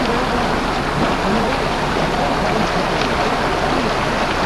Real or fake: real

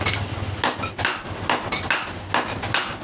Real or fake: real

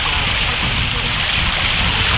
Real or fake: real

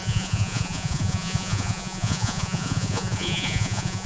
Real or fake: fake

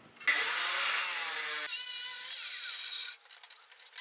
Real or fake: real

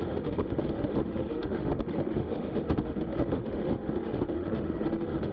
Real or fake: fake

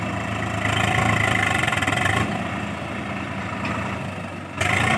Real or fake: fake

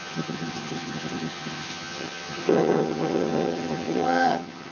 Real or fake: fake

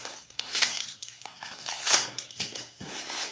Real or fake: fake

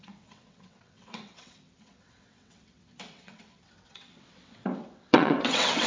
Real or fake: fake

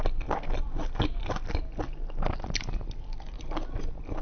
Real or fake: real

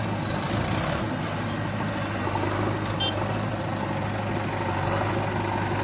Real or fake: real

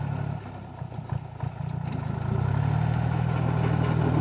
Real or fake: real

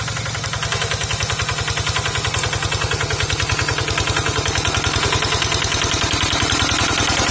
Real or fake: real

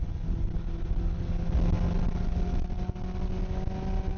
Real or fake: real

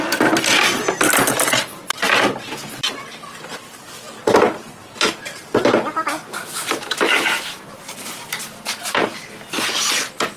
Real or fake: real